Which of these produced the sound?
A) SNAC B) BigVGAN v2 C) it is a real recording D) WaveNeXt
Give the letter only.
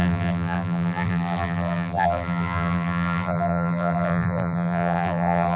B